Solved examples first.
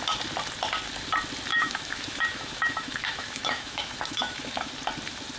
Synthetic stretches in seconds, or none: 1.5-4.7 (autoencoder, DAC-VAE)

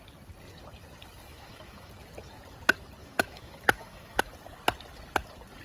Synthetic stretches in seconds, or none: 1.3-1.9 (autoencoder, DAC-VAE); 3.0-4.2

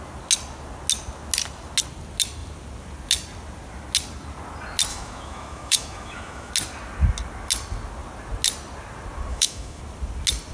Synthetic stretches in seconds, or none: 4.9-6.5 (autoencoder, DAC-VAE); 9.3-9.8

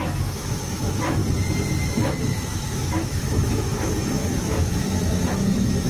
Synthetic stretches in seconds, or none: 0.0-1.2 (autoencoder, DAC-VAE); 1.9-5.9

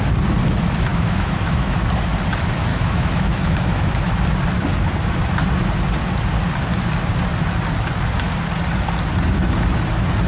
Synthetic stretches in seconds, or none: 0.9-1.8 (autoencoder, DAC-VAE); 2.7-4.1

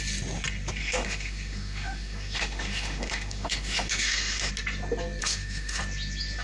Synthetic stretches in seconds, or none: 0.8-4.5 (autoencoder, DAC-VAE); 5.2-5.8

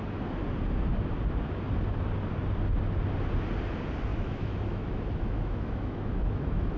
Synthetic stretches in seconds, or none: 4.1-6.8 (autoencoder, DAC-VAE)